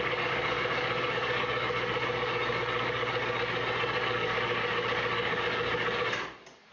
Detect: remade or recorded remade